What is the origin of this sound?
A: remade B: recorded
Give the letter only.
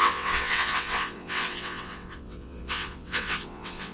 A